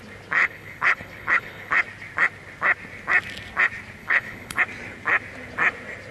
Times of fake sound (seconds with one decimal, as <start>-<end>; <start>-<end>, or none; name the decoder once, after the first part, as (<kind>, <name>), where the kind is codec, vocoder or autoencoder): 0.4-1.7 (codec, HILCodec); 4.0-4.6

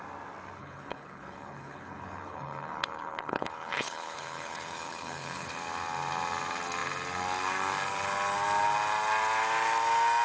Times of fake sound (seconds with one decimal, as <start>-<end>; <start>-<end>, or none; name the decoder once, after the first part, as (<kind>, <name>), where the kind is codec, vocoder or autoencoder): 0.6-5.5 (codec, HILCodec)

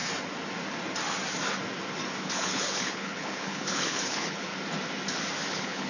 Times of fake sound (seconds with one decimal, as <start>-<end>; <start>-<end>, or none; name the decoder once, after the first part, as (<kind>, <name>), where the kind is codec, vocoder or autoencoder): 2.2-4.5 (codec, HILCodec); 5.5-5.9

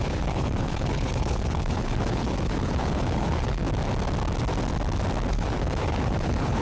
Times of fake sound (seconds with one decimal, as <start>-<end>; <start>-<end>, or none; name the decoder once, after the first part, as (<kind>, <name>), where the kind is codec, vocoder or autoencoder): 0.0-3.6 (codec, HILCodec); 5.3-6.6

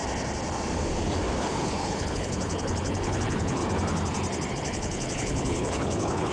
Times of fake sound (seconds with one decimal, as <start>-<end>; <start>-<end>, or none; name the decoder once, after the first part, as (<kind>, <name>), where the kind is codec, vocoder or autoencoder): 1.4-3.6 (codec, HILCodec); 4.5-6.3